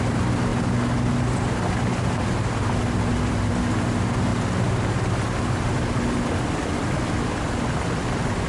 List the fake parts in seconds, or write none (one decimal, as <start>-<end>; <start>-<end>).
none